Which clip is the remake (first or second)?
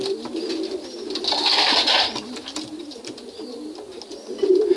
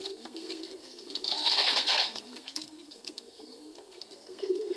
second